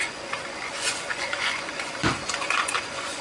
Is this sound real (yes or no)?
no